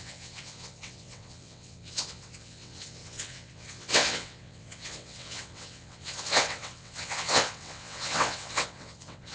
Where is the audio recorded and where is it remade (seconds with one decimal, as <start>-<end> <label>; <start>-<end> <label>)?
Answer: 0.0-9.3 remade